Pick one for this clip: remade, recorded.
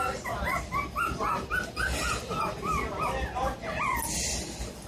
recorded